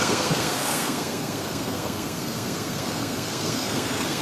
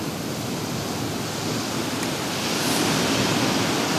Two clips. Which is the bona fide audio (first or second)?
second